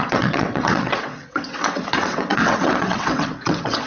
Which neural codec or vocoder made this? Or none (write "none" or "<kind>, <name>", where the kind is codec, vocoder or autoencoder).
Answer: vocoder, WaveNeXt